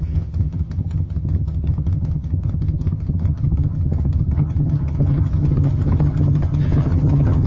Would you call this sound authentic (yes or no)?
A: no